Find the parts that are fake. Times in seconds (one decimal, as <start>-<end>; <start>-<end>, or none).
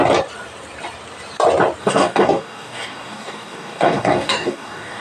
1.8-5.0